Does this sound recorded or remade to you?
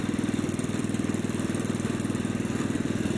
remade